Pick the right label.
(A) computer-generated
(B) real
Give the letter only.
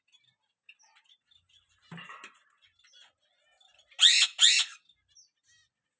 B